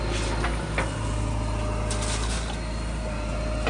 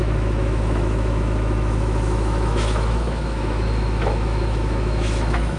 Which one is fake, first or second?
second